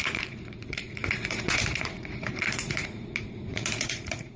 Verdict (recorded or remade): remade